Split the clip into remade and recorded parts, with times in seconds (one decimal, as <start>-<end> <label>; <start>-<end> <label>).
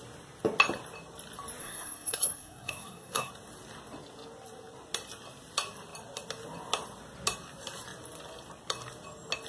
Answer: 0.0-1.6 recorded; 1.6-3.3 remade; 3.3-9.5 recorded